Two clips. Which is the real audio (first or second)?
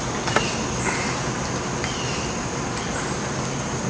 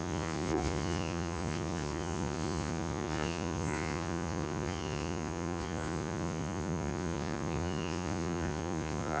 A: first